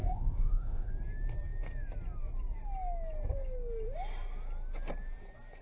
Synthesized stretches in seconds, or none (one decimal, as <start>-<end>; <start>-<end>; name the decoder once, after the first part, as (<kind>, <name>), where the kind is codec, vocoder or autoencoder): 0.0-0.9 (autoencoder, DAC-VAE)